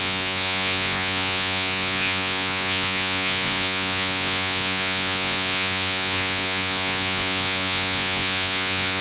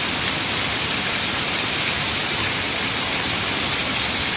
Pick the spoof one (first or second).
first